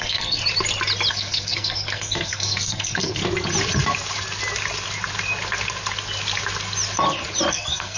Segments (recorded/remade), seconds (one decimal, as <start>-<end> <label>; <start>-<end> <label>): 0.0-0.4 remade; 0.4-1.1 recorded; 1.1-3.2 remade; 3.2-7.5 recorded; 7.5-8.0 remade